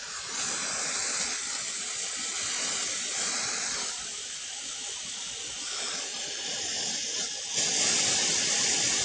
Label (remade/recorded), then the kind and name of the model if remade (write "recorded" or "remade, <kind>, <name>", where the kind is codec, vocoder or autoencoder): recorded